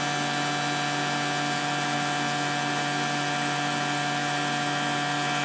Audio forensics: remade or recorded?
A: recorded